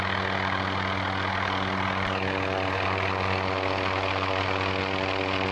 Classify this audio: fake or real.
real